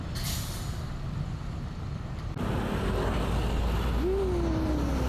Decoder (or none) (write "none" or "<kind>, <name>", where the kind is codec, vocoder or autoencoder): none